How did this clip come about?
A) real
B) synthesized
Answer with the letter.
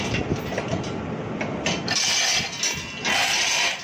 A